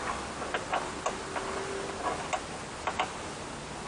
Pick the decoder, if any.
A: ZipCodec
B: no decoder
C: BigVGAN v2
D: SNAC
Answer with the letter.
B